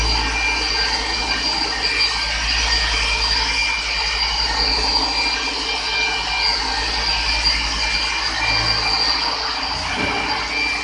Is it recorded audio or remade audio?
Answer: recorded